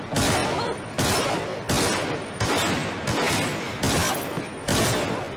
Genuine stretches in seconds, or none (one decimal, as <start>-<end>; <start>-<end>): 0.0-5.4

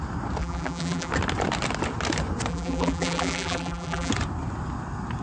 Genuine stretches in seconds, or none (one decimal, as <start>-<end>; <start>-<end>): 0.0-0.4; 1.1-2.5; 4.1-5.2

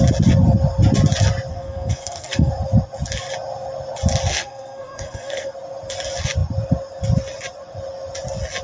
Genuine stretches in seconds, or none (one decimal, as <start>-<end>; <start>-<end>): 0.0-1.5; 2.5-4.3; 5.5-8.6

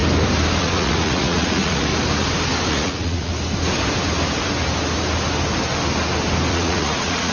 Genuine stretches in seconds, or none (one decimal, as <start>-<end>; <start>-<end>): 0.0-0.6; 1.9-2.7; 3.3-6.5

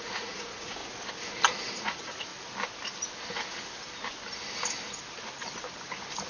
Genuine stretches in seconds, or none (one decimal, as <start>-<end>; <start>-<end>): 0.8-1.8; 2.3-6.3

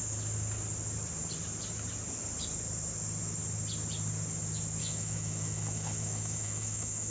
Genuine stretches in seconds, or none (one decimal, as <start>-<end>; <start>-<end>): 0.0-4.8

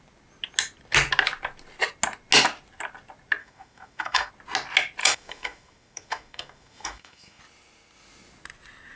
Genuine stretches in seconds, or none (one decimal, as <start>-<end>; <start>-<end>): 0.0-3.4; 4.3-5.0; 7.4-9.0